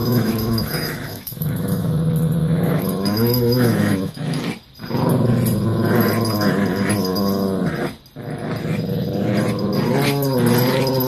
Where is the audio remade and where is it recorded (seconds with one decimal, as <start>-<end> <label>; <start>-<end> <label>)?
0.0-2.0 remade; 2.0-2.4 recorded; 2.4-4.4 remade; 4.4-11.1 recorded